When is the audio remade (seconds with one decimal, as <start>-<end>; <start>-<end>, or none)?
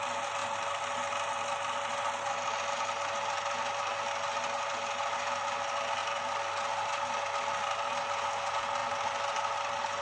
none